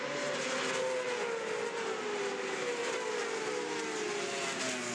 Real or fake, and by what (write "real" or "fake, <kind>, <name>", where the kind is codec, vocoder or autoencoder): real